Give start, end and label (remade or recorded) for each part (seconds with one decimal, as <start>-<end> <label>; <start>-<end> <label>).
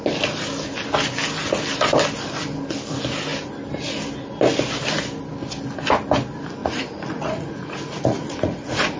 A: 0.0-6.6 recorded; 6.6-9.0 remade